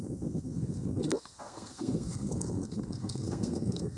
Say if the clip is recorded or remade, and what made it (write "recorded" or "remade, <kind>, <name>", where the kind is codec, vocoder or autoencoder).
remade, codec, SNAC